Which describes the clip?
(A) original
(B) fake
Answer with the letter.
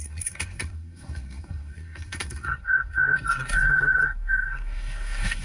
B